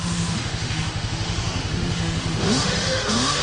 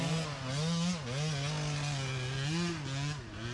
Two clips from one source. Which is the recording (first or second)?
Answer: second